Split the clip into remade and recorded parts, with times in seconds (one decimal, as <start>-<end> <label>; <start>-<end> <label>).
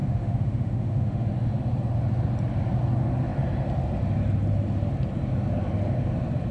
0.0-1.3 remade; 1.3-6.5 recorded